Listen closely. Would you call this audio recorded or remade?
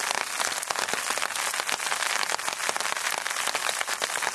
recorded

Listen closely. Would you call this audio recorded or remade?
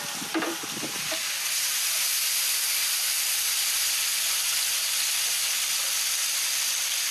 remade